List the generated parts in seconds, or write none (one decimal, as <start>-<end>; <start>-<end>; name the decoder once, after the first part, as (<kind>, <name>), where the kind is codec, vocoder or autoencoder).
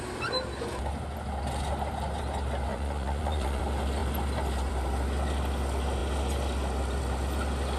2.7-3.6 (vocoder, Vocos)